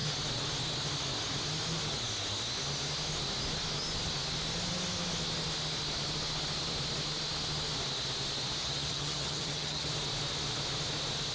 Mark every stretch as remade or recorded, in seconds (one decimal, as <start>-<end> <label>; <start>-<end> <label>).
0.0-8.6 recorded; 8.6-9.9 remade; 9.9-11.3 recorded